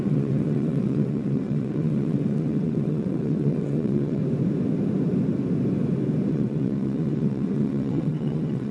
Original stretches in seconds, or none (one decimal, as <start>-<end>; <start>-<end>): 4.2-6.3